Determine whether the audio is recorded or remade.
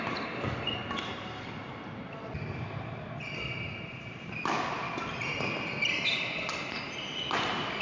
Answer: recorded